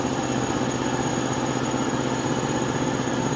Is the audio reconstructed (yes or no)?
no